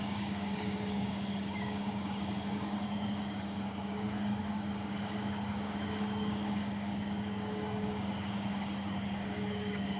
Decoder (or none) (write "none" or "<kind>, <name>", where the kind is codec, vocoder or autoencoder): codec, DAC